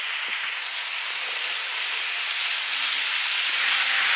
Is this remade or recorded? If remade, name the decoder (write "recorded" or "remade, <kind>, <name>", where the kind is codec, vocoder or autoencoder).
recorded